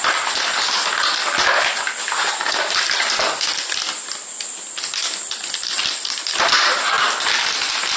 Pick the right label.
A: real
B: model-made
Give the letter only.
A